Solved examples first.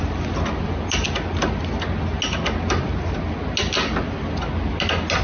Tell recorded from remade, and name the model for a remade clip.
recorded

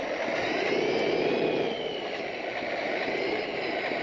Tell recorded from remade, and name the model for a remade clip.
recorded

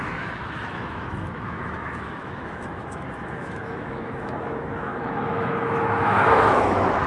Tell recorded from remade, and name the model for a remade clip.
remade, autoencoder, DAC-VAE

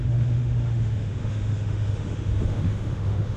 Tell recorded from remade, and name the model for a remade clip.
remade, autoencoder, DAC-VAE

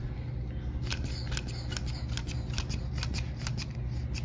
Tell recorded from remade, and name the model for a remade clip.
recorded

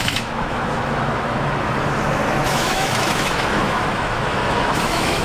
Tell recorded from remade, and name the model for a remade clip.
remade, autoencoder, DAC-VAE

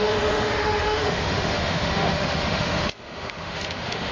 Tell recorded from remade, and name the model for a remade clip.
remade, autoencoder, DAC-VAE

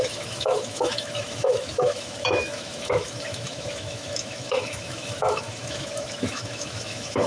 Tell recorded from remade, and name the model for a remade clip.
remade, autoencoder, DAC-VAE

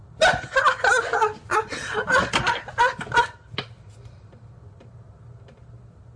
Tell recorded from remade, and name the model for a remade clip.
recorded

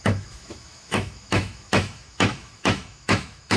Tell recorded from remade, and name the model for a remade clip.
remade, autoencoder, DAC-VAE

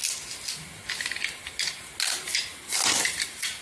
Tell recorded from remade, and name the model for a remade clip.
recorded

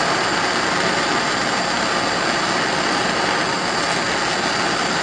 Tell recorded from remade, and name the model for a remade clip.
recorded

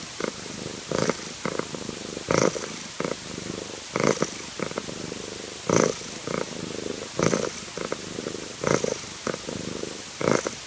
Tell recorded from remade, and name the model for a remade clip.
recorded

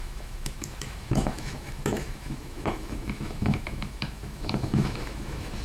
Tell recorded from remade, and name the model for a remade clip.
remade, autoencoder, DAC-VAE